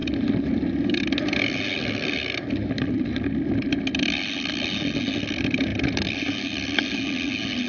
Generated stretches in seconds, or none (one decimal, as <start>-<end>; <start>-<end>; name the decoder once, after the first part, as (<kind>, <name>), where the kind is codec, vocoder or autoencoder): 5.7-6.8 (vocoder, BigVGAN v2)